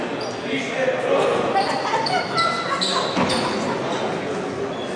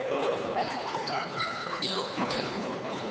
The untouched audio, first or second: first